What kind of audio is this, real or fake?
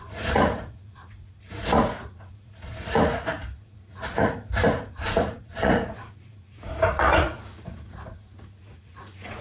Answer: fake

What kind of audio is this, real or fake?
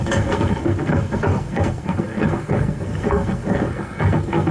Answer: fake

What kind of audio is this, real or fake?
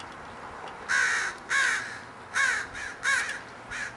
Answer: real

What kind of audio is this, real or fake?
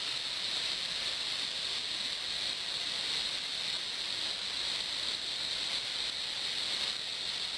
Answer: real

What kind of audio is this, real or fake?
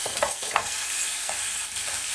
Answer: fake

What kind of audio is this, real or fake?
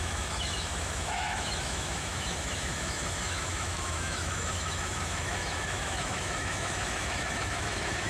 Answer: fake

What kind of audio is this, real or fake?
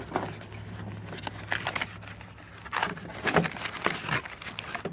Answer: real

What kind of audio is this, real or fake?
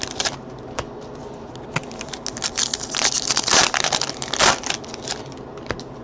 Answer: real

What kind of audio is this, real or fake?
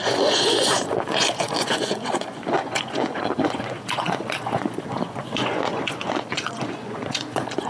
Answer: fake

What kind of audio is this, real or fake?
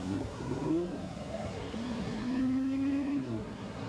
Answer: fake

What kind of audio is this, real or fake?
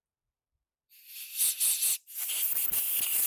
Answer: real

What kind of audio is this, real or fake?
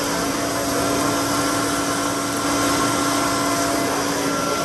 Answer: real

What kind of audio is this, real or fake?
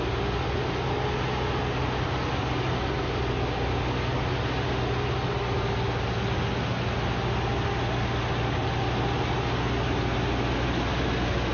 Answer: real